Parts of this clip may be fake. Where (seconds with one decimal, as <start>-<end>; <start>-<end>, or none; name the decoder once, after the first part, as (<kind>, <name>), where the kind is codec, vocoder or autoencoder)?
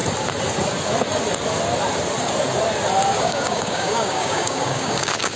3.2-5.4 (codec, DAC)